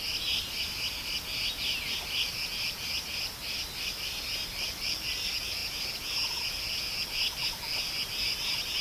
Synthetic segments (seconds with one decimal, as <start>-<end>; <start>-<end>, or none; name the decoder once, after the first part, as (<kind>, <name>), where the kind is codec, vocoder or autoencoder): none